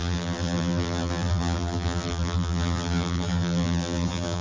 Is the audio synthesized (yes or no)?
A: yes